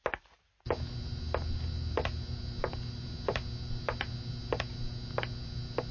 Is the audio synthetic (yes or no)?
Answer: no